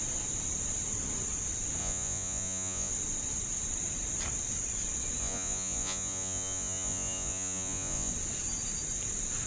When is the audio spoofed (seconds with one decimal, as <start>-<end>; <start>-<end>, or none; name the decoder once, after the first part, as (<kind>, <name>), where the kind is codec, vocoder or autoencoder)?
1.8-2.9 (vocoder, Vocos); 5.2-8.1